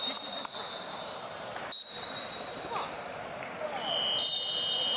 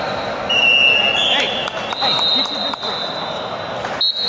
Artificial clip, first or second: first